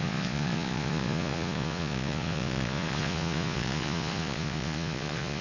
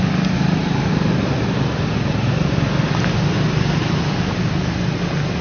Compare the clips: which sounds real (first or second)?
second